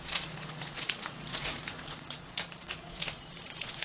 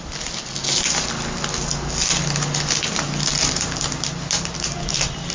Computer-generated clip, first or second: first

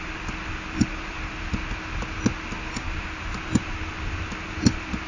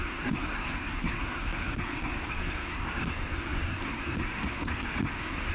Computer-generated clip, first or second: second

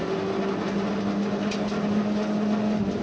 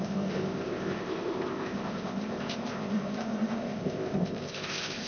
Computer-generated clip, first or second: second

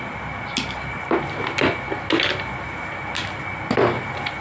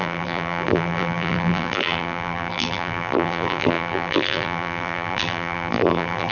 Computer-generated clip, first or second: second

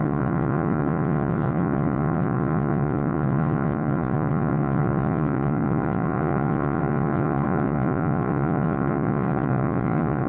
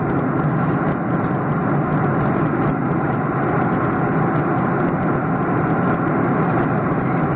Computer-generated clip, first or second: first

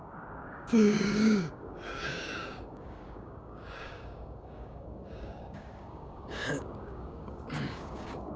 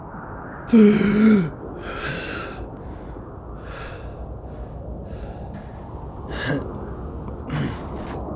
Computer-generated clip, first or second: first